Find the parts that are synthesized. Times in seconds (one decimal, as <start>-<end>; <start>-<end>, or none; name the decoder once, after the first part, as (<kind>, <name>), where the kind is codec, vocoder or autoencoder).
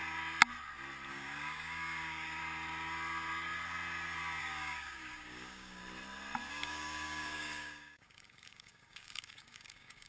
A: 1.1-2.4 (codec, DAC); 4.4-5.8; 6.5-10.1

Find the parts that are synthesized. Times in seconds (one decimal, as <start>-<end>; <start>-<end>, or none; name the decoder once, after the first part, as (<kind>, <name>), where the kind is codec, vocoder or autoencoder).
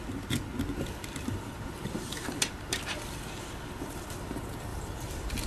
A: 1.0-4.3 (vocoder, BigVGAN v2); 4.7-5.5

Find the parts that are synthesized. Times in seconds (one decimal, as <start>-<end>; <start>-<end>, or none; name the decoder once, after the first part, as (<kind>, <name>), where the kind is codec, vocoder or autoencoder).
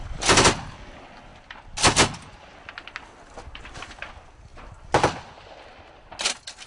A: none